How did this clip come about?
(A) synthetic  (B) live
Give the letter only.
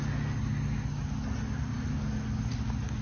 B